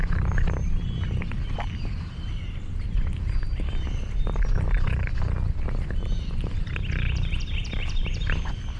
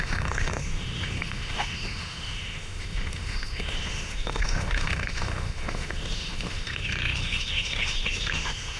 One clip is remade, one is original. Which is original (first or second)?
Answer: first